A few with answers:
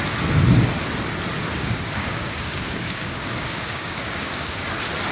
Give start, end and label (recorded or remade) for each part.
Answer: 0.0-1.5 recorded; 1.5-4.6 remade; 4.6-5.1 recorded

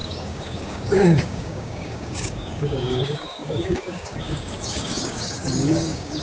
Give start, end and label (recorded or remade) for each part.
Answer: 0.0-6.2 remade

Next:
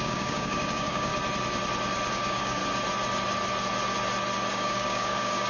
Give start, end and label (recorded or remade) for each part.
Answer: 0.0-1.1 remade; 1.1-2.1 recorded; 2.1-2.6 remade; 2.6-4.5 recorded; 4.5-5.5 remade

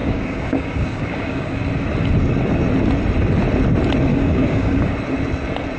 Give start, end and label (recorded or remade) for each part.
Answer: 0.0-1.7 remade; 1.7-4.1 recorded; 4.1-4.9 remade; 4.9-5.8 recorded

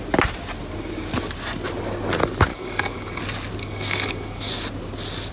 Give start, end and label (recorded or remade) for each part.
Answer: 0.0-2.5 recorded; 2.5-3.2 remade; 3.2-3.6 recorded; 3.6-4.5 remade; 4.5-5.3 recorded

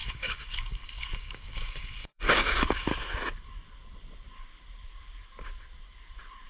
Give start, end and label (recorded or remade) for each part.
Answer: 0.0-2.9 remade; 2.9-6.5 recorded

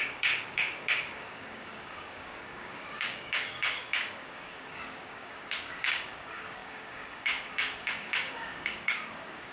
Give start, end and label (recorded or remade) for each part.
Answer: 0.0-9.5 remade

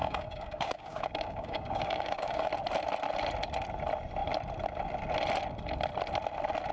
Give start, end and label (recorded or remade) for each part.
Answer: 0.0-2.5 remade; 2.5-6.7 recorded